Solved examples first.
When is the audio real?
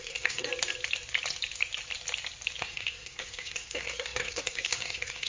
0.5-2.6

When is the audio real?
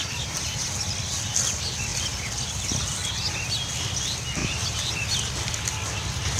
0.6-4.4; 4.9-6.4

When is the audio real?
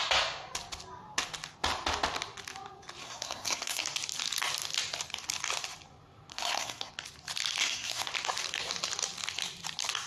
0.0-3.0; 3.8-6.3; 6.9-7.6; 8.1-10.1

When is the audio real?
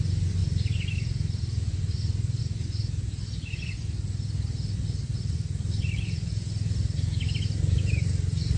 0.0-8.6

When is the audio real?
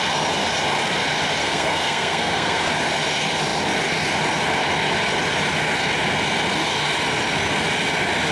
0.0-1.4; 2.7-8.3